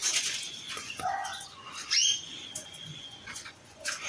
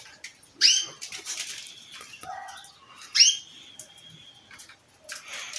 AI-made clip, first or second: first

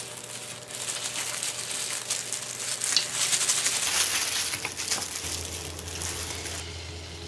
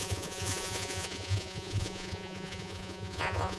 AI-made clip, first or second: second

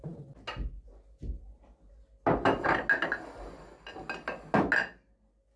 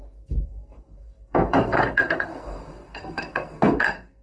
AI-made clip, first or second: second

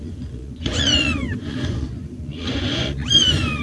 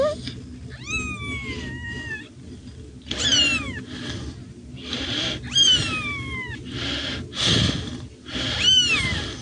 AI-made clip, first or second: first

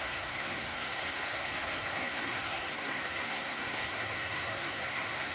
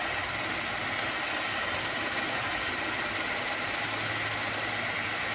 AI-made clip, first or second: first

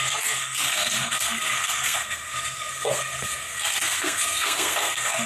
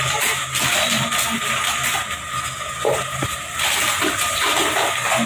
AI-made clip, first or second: first